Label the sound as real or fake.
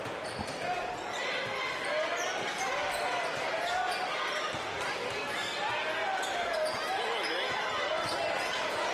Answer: real